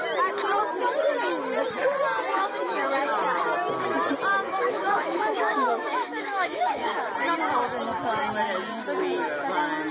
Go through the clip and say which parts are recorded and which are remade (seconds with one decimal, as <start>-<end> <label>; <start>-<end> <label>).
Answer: 0.0-2.3 recorded; 2.3-3.1 remade; 3.1-4.3 recorded; 4.3-7.1 remade; 7.1-9.9 recorded